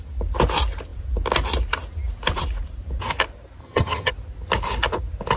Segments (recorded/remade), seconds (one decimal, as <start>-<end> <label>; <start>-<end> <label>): 0.0-3.6 recorded; 3.6-4.1 remade; 4.1-5.4 recorded